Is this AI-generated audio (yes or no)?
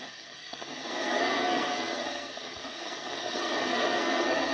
yes